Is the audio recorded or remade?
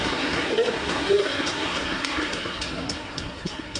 remade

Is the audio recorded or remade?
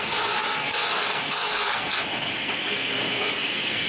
remade